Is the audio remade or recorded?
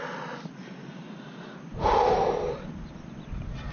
recorded